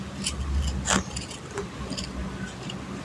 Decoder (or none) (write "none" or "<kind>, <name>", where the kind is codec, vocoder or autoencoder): none